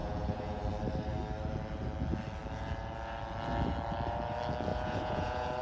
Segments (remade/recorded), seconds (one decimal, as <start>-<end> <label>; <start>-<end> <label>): 0.0-0.6 remade; 0.6-4.7 recorded; 4.7-5.6 remade